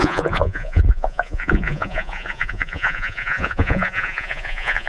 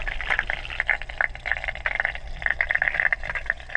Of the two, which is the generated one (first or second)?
first